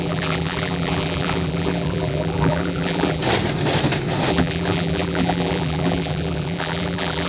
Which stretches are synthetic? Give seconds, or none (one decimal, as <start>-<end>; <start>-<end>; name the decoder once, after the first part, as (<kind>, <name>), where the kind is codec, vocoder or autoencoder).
0.0-3.2 (vocoder, BigVGAN v2); 4.3-7.3